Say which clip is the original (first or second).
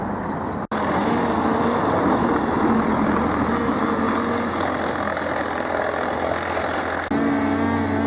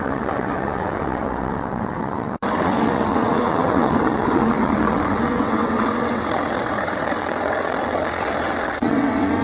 first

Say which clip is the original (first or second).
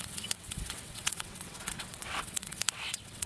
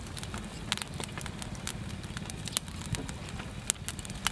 second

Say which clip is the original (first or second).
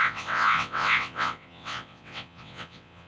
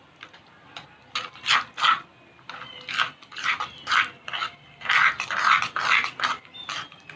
second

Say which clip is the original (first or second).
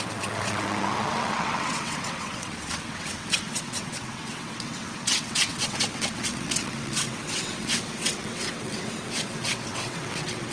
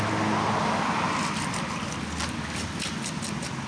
second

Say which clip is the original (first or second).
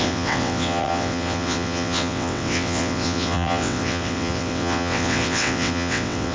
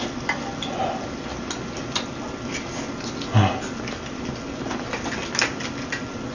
second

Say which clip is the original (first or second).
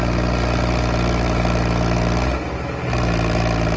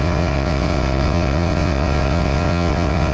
first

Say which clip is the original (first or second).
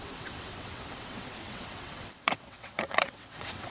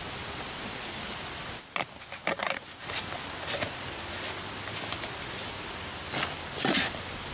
second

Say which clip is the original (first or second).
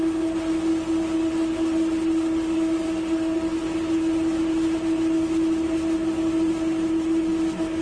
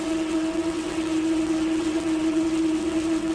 first